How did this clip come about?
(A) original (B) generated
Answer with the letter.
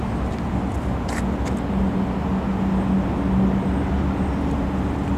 A